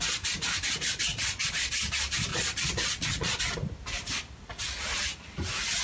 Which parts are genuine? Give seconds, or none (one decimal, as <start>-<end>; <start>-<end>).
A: 0.0-1.1; 1.7-2.3; 3.4-5.8